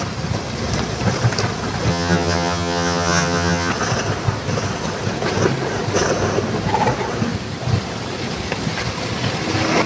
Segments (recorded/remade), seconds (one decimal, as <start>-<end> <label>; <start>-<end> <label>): 0.0-1.9 recorded; 1.9-3.7 remade; 3.7-9.9 recorded